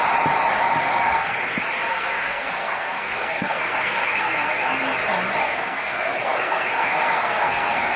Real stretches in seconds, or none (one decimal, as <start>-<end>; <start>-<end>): 0.0-0.8; 1.4-1.9; 4.8-5.4